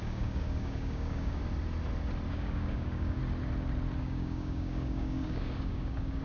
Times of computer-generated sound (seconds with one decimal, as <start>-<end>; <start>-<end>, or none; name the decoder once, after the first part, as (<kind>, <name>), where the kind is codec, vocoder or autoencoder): 0.0-1.4 (codec, DAC); 2.3-3.2; 4.0-6.2